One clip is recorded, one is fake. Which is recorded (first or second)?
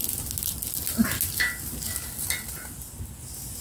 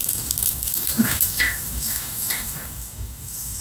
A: first